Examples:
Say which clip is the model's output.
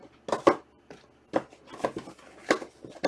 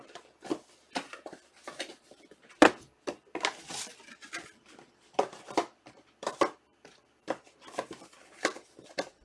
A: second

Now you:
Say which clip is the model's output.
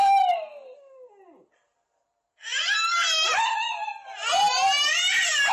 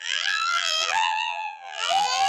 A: second